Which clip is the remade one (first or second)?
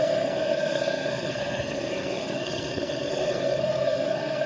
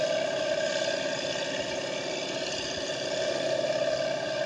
first